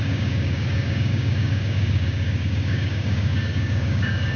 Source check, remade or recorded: remade